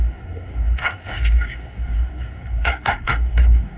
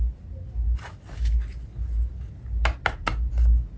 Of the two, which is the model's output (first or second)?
first